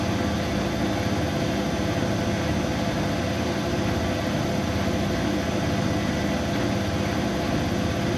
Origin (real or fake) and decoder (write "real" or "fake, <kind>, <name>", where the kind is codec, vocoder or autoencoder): real